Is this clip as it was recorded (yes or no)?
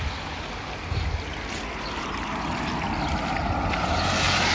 yes